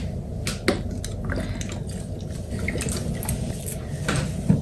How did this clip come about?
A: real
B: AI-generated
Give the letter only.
A